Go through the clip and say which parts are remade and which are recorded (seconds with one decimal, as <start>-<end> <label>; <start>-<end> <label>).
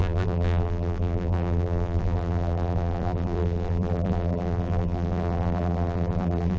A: 0.0-6.6 remade